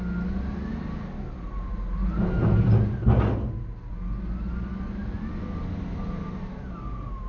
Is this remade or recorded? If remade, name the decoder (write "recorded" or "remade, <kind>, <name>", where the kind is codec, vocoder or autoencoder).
recorded